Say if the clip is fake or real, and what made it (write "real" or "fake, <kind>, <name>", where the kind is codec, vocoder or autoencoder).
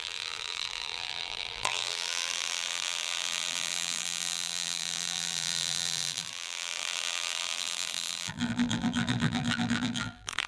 fake, vocoder, BigVGAN v2